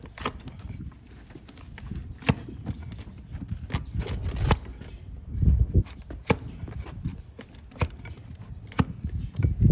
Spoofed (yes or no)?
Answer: no